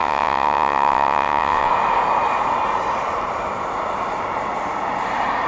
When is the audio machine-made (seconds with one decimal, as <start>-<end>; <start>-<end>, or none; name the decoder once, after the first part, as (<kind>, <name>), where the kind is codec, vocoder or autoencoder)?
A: 0.0-1.7 (vocoder, WaveNeXt)